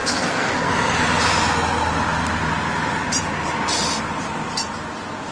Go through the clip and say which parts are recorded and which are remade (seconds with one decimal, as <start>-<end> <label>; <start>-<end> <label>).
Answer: 0.0-0.7 remade; 0.7-5.3 recorded